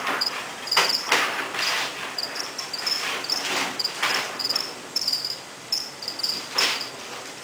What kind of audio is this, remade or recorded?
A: remade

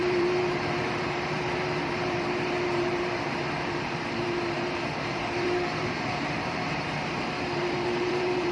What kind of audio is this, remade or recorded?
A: remade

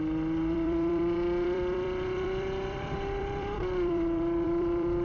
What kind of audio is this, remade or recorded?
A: remade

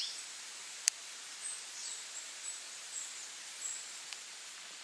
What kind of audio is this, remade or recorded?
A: remade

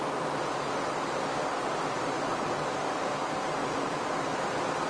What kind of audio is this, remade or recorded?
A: remade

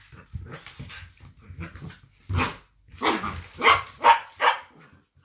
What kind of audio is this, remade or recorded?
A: recorded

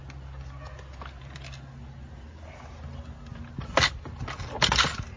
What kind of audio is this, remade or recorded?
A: recorded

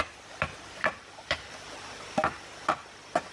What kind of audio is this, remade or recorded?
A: remade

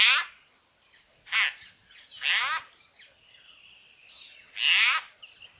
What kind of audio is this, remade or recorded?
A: recorded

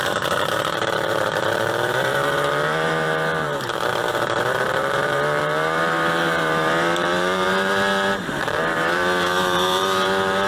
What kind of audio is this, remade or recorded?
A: remade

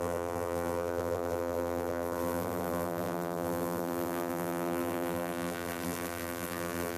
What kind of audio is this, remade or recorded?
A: remade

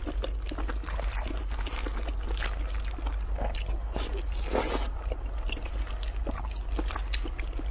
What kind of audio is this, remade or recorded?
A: recorded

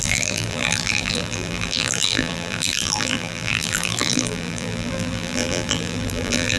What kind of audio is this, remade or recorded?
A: remade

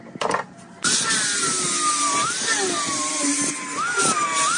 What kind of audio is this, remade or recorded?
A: recorded